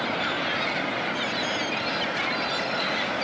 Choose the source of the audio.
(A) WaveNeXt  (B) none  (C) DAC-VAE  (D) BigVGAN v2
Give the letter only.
B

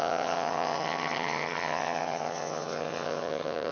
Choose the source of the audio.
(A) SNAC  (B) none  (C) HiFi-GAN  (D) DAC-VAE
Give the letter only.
C